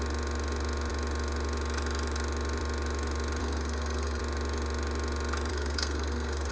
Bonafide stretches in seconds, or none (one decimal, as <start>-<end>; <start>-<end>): 0.0-3.4; 4.2-5.5